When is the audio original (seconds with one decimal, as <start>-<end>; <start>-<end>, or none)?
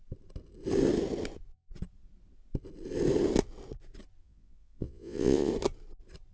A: 0.0-4.2; 5.5-6.3